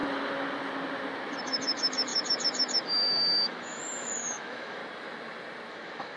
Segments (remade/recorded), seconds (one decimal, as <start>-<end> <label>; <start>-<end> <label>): 0.0-1.4 recorded; 1.4-4.8 remade; 4.8-5.7 recorded; 5.7-6.2 remade